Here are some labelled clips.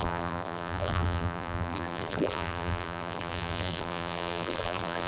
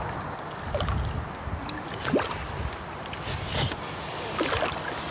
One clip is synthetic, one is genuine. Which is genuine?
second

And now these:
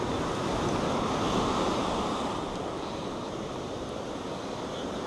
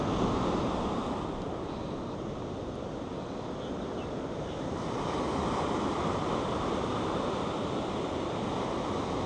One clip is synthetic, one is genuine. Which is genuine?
second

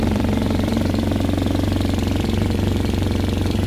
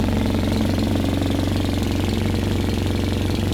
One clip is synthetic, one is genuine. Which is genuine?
second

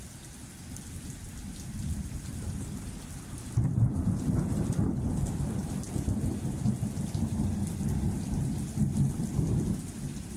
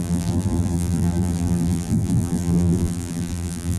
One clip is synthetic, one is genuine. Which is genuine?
first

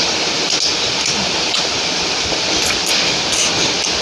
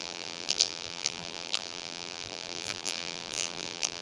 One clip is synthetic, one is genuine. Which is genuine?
first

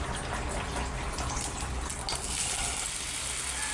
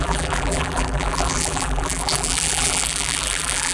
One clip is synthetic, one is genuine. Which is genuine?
first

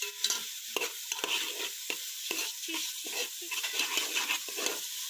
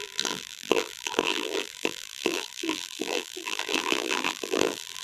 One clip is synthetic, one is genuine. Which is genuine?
first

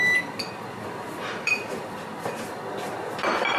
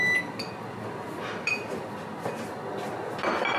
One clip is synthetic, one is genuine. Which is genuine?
second